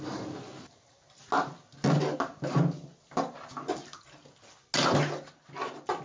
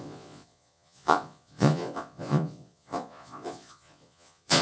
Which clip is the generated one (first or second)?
second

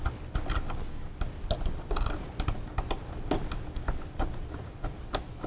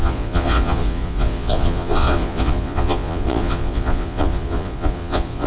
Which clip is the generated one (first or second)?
second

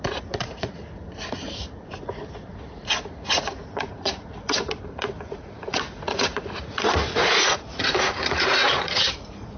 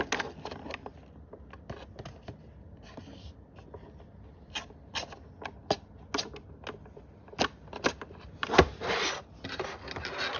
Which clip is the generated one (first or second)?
first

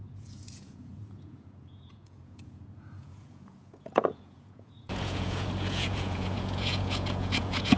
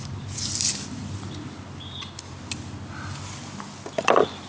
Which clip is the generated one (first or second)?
first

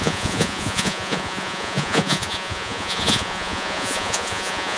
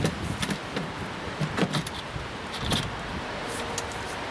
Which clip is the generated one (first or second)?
first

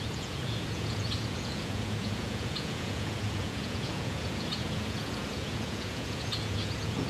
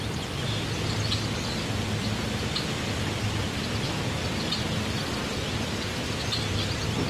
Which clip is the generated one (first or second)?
first